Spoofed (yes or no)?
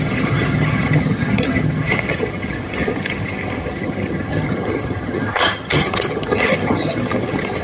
yes